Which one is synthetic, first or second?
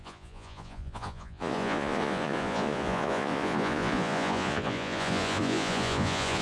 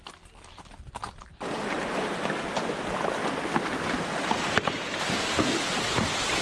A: first